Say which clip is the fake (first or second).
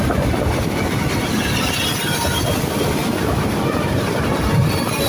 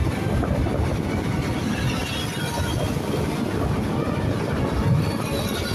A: first